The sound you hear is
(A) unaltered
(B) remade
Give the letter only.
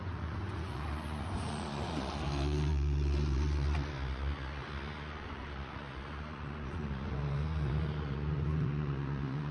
B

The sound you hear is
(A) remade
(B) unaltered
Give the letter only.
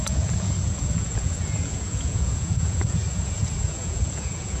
A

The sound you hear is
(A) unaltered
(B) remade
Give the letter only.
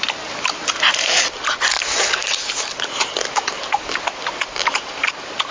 A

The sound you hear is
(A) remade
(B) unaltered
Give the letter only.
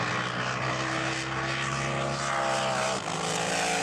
B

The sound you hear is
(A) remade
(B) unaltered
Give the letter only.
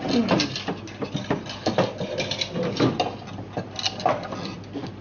B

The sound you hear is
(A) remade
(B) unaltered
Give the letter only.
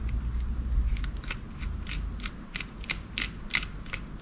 B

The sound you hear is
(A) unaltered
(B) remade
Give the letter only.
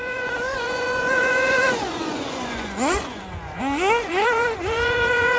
B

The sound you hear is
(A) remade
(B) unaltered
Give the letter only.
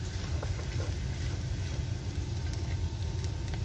B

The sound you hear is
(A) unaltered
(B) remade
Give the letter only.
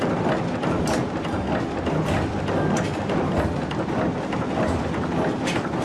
A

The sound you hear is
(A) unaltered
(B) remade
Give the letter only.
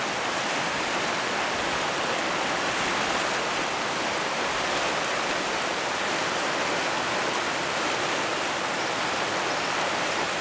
A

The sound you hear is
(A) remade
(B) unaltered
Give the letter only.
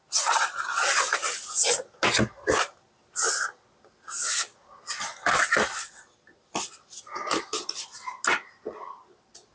B